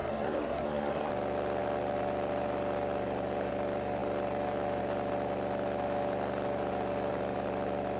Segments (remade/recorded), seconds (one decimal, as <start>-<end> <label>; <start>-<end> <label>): 0.0-1.1 remade; 1.1-8.0 recorded